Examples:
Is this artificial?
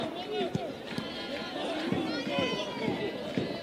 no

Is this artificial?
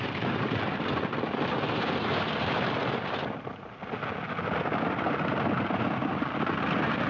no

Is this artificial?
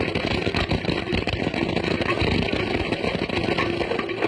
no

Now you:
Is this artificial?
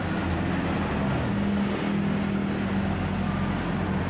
no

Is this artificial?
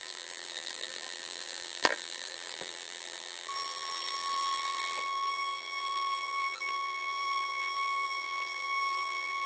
yes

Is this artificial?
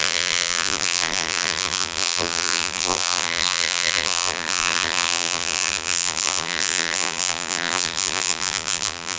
yes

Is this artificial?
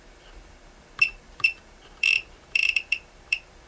yes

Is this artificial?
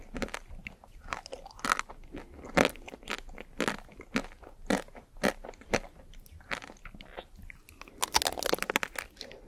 no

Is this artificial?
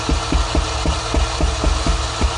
no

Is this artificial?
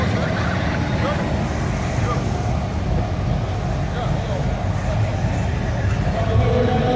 no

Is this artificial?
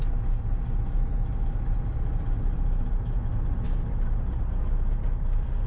no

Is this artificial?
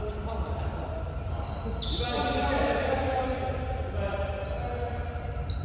no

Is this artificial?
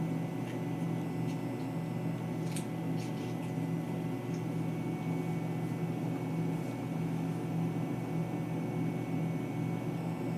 no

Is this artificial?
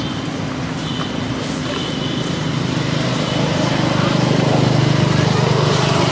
no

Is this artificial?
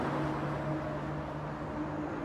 no